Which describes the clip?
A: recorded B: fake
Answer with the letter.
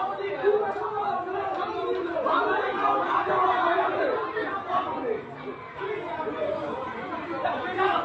A